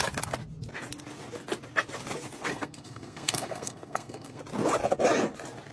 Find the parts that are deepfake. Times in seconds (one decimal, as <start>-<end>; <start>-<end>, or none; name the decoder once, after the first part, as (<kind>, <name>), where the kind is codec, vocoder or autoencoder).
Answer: 2.5-4.4 (codec, SNAC)